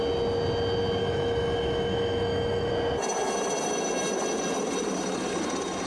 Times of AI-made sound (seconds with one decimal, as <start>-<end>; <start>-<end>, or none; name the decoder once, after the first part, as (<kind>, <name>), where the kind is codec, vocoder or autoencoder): 1.0-2.7 (autoencoder, DAC-VAE)